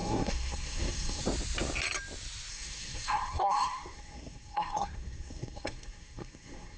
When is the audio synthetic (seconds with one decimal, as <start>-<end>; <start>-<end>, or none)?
0.0-1.2; 2.5-6.8